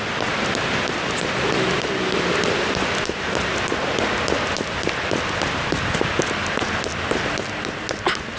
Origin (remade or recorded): recorded